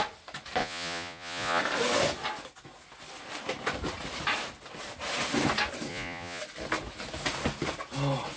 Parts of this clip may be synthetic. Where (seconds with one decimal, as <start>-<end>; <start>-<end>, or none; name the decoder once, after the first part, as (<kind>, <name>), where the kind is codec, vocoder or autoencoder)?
0.6-1.6 (vocoder, Vocos); 5.9-6.4